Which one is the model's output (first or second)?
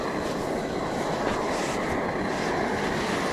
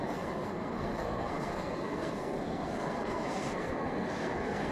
second